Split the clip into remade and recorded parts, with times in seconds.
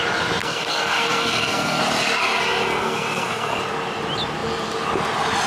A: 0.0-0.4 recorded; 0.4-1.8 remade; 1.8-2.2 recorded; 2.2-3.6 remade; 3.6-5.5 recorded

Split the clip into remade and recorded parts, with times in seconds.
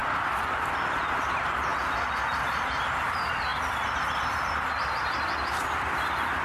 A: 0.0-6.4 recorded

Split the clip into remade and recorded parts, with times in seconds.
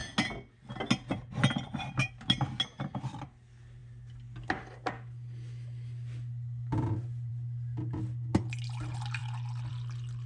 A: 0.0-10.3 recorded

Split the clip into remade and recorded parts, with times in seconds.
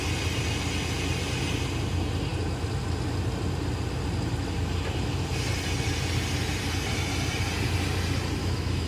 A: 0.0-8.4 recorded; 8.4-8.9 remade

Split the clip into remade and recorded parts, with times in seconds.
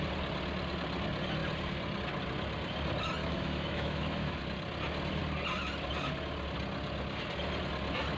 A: 0.0-3.2 recorded; 3.2-4.4 remade; 4.4-8.2 recorded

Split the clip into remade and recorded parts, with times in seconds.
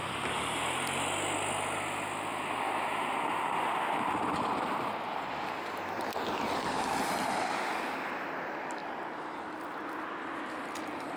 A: 0.0-11.2 recorded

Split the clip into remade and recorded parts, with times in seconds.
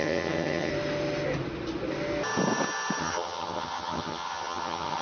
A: 0.0-0.7 remade; 0.7-3.0 recorded; 3.0-5.0 remade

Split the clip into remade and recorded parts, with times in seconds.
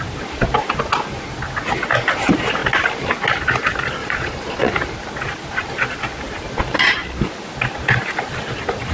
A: 0.0-4.0 recorded; 4.0-4.7 remade; 4.7-8.9 recorded